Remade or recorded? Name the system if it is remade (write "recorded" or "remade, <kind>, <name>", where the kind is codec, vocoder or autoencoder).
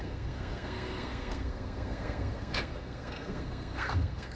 remade, codec, SNAC